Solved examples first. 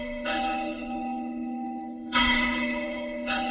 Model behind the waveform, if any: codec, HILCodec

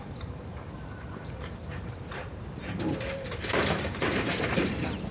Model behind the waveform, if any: vocoder, BigVGAN v2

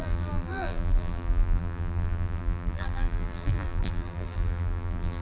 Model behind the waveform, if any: vocoder, BigVGAN v2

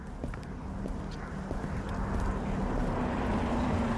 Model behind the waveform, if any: none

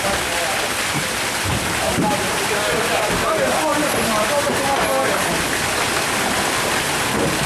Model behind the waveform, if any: vocoder, BigVGAN v2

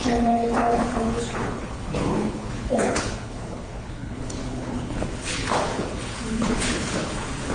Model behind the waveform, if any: codec, HILCodec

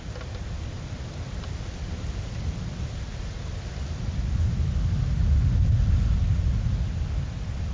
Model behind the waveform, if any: none